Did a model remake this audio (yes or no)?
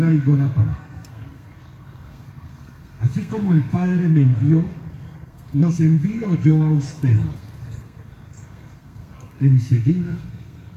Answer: yes